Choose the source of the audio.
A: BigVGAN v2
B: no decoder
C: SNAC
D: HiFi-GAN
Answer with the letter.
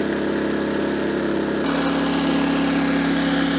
B